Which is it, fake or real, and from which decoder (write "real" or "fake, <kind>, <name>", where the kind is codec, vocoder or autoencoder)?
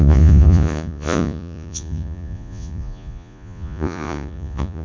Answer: fake, vocoder, Vocos